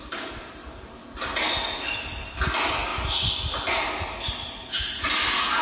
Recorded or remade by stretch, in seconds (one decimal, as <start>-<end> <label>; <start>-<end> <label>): 0.0-5.6 recorded